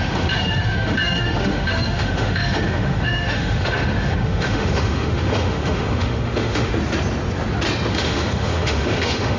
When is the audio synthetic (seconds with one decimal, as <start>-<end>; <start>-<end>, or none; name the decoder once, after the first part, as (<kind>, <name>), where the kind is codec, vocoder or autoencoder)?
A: 0.0-6.7 (autoencoder, DAC-VAE); 7.9-9.4